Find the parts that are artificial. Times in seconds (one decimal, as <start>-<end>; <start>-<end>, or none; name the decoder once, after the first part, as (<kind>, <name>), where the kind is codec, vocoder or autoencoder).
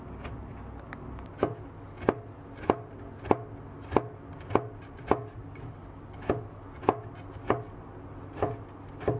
none